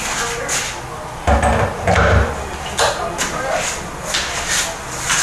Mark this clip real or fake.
real